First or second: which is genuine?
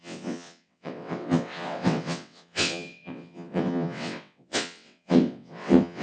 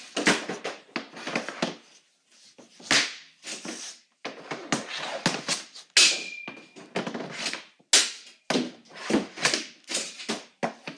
second